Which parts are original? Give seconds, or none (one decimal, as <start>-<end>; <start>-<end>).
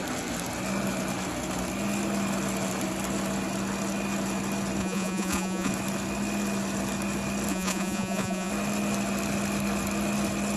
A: 0.0-4.8; 5.7-7.5; 8.5-10.6